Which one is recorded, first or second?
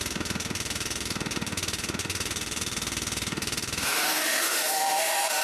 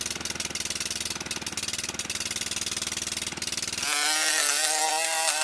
second